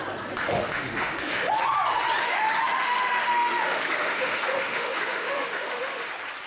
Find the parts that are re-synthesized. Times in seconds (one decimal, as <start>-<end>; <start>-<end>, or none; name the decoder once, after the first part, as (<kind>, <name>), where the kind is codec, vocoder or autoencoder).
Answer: 0.4-1.5 (autoencoder, DAC-VAE); 2.2-6.1

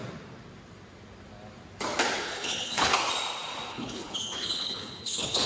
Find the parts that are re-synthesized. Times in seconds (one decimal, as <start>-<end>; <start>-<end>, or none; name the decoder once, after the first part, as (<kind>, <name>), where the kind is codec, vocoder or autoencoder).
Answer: 2.2-2.9 (codec, HILCodec); 3.7-5.5

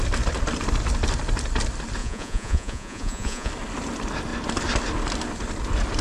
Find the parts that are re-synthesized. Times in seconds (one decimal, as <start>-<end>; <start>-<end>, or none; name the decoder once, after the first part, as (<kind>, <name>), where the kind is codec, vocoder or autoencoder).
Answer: 2.0-3.5 (vocoder, Vocos)

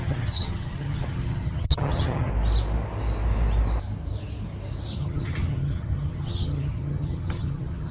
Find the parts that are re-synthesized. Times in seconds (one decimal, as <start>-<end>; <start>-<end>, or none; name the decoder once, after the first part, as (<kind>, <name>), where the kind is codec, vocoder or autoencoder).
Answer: 0.0-2.3 (vocoder, HiFi-GAN); 5.0-7.9

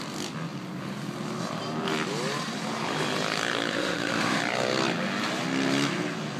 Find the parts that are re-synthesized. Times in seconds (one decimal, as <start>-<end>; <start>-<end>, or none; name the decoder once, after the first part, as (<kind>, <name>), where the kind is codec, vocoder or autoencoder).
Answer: 3.7-4.4 (autoencoder, DAC-VAE)

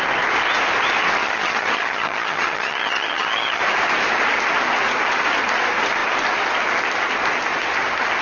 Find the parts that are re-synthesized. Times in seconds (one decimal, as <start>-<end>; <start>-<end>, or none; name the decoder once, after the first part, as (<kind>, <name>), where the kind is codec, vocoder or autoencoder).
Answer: 1.2-3.6 (vocoder, HiFi-GAN)